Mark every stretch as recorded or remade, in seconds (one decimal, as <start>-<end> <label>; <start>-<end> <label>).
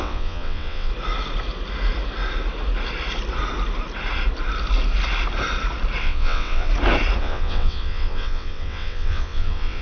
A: 0.0-0.9 remade; 0.9-6.0 recorded; 6.0-6.7 remade; 6.7-7.2 recorded; 7.2-9.8 remade